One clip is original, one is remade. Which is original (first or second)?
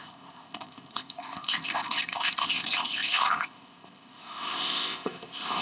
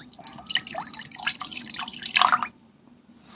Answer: second